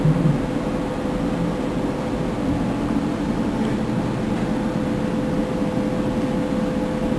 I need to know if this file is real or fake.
real